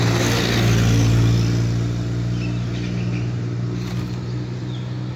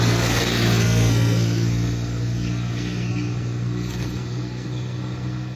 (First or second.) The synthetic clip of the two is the second